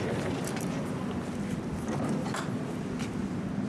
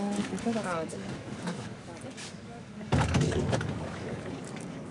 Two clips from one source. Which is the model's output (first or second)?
second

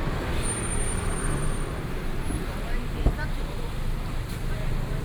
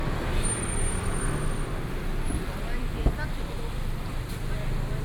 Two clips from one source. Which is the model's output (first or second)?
first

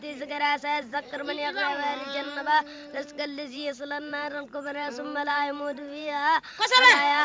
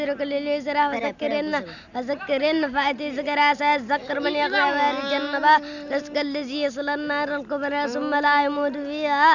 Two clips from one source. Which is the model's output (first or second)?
first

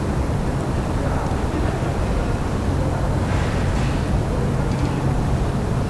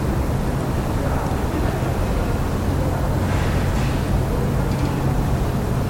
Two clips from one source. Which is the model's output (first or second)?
first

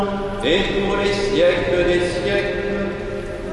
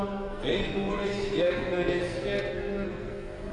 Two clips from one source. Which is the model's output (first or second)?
second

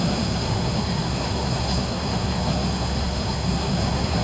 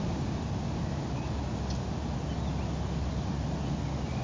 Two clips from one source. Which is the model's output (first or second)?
first